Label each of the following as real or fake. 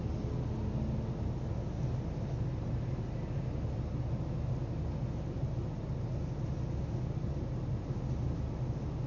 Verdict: real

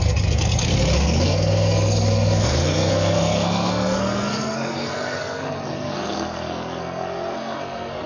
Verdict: fake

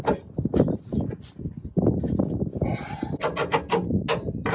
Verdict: real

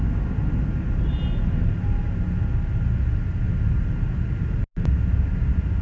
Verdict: real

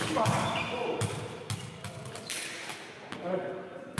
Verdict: real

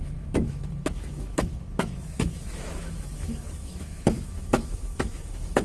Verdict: fake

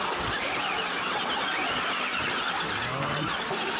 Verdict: real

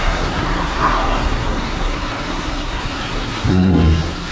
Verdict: fake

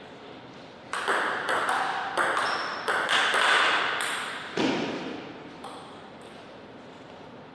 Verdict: fake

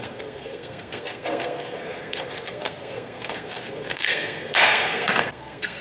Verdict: fake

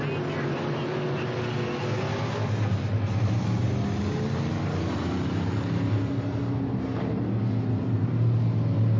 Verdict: real